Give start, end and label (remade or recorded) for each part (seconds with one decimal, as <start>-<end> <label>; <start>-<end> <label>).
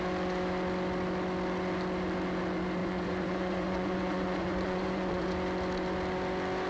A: 0.0-2.8 recorded; 2.8-5.3 remade; 5.3-6.7 recorded